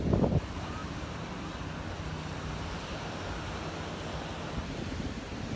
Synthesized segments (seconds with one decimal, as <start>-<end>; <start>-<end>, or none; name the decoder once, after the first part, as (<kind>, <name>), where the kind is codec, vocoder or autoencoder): none